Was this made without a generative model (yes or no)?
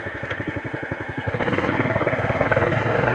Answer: no